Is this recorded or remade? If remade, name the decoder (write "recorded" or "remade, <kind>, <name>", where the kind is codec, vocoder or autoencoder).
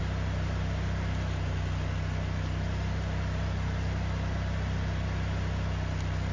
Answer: recorded